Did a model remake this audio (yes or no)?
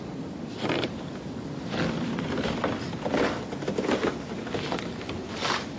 no